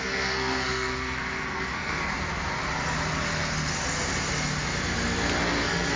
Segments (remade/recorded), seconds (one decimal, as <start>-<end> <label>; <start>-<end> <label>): 0.0-2.1 remade; 2.1-5.4 recorded; 5.4-6.0 remade